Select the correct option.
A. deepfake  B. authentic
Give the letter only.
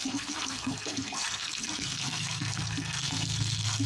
A